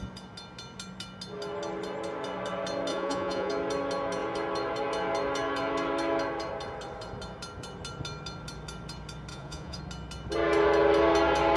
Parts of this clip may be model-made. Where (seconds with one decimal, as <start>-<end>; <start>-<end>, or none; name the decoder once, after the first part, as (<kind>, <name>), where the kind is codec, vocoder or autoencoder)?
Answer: 2.9-3.5 (vocoder, Vocos); 9.3-9.8